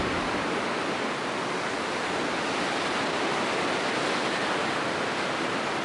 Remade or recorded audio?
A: recorded